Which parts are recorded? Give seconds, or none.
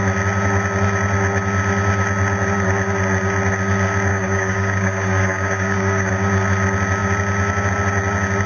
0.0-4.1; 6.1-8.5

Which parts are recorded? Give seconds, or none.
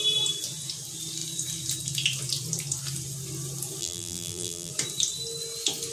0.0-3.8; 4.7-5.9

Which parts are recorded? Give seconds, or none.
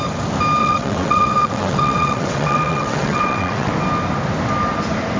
0.0-0.6; 3.7-5.2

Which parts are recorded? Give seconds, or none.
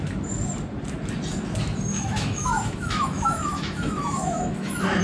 0.0-1.9